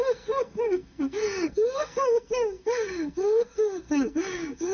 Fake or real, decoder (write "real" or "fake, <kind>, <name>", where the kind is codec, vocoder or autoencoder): fake, codec, SNAC